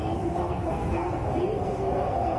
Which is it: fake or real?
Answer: fake